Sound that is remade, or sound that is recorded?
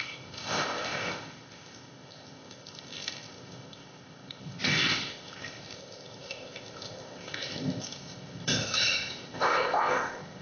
remade